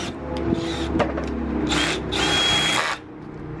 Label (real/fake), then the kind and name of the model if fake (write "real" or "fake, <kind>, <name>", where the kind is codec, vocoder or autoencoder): real